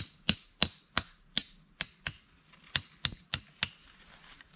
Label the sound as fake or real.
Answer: real